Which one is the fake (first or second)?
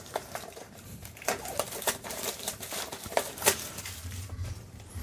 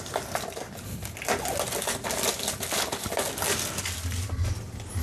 first